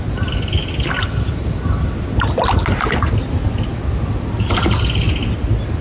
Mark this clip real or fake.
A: real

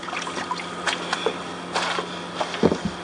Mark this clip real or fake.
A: real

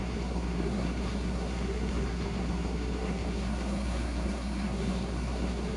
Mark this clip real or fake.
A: fake